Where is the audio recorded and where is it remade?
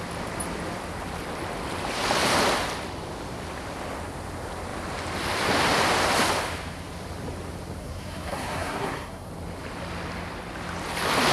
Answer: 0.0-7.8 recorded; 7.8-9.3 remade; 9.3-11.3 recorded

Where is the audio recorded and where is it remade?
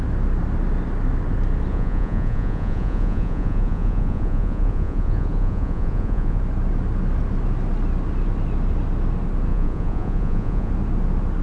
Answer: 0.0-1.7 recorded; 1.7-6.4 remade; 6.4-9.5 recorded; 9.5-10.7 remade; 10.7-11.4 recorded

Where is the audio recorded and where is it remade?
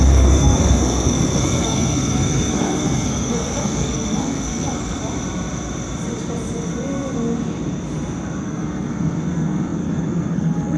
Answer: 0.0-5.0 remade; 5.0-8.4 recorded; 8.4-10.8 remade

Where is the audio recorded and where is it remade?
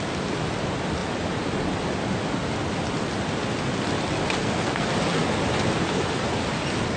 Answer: 0.0-4.4 recorded; 4.4-4.9 remade; 4.9-7.0 recorded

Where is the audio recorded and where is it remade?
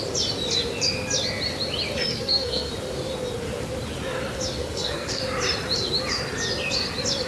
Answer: 0.0-2.1 recorded; 2.1-2.7 remade; 2.7-4.6 recorded; 4.6-5.2 remade; 5.2-7.3 recorded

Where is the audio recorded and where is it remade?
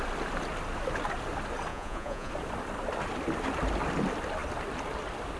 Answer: 0.0-1.7 recorded; 1.7-2.3 remade; 2.3-5.4 recorded